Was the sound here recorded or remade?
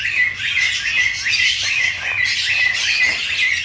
recorded